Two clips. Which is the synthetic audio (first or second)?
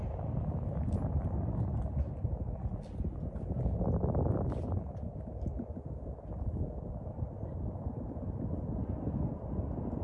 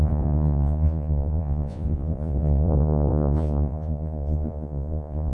second